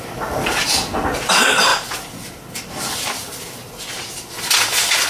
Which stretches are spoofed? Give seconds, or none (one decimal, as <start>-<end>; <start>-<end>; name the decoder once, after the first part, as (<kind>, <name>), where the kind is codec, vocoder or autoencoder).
none